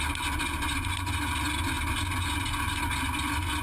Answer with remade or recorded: recorded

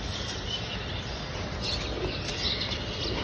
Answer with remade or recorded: recorded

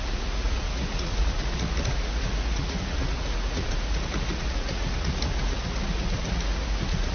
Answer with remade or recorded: remade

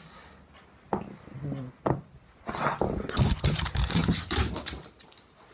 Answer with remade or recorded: recorded